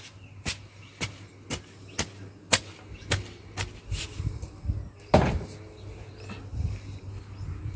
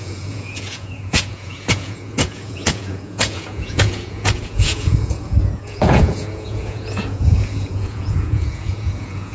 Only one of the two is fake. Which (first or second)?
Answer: second